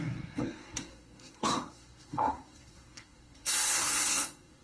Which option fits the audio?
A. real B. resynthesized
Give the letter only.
B